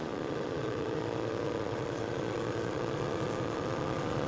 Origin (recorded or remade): remade